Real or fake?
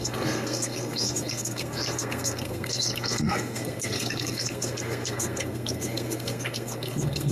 fake